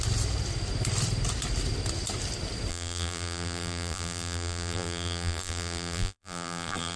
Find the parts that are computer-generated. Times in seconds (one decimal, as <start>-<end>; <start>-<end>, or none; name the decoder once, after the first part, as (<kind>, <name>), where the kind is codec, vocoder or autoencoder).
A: 2.7-7.0 (vocoder, BigVGAN v2)